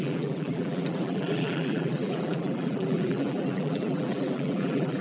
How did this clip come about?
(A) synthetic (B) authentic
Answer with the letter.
A